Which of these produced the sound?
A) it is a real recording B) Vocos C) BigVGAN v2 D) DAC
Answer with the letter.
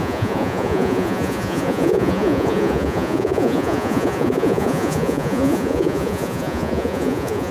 B